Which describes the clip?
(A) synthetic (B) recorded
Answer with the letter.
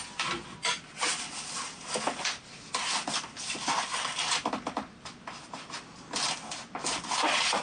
B